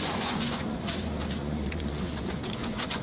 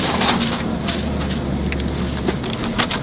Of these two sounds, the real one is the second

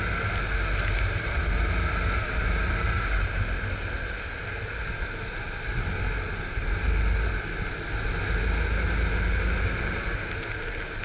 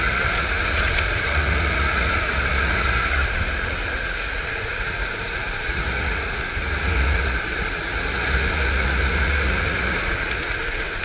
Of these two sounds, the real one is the first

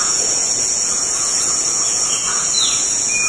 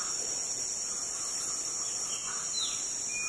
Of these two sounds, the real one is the second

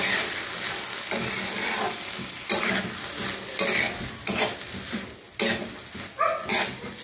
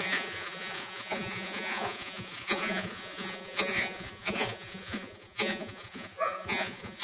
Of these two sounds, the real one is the first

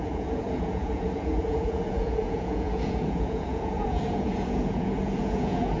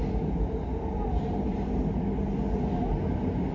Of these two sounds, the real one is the second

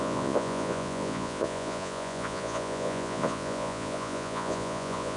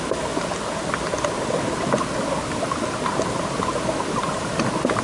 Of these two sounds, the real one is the second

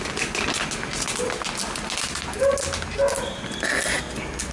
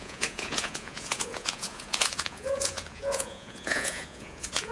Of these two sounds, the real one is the first